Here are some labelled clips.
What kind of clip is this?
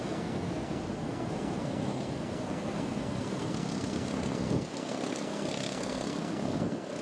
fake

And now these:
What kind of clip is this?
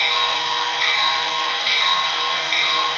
fake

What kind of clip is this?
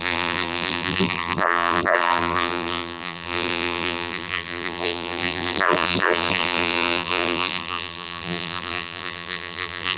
fake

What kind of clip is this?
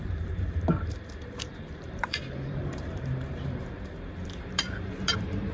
fake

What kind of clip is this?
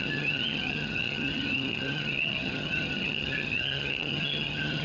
fake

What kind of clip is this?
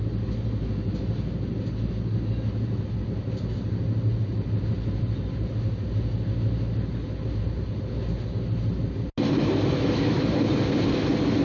real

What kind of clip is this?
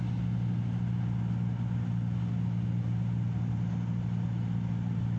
real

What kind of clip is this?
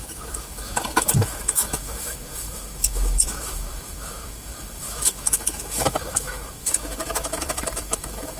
fake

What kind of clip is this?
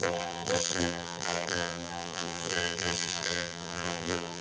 fake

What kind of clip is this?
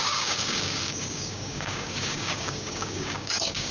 fake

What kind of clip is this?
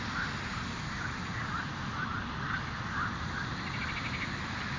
real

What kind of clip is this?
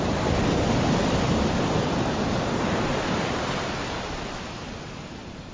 real